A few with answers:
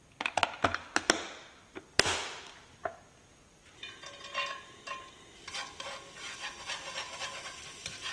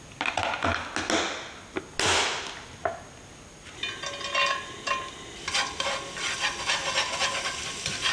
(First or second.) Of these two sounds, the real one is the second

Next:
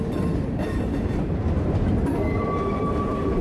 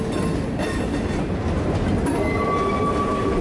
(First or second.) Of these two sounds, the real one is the second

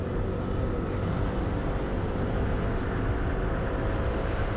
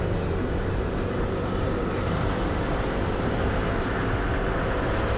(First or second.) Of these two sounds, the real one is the first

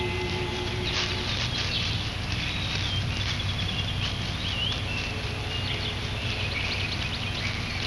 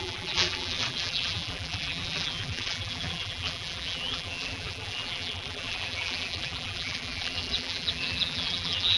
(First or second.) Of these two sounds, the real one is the first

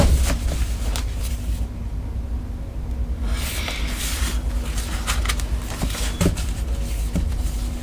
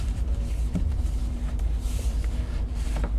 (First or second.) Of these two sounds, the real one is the first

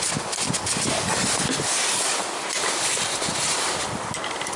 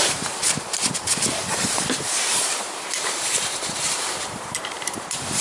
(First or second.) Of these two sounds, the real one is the first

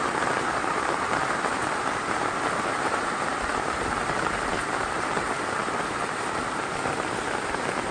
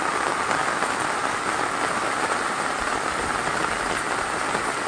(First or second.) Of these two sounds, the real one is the second